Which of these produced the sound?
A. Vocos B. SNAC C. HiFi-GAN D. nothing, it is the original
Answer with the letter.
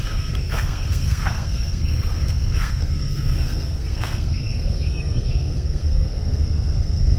B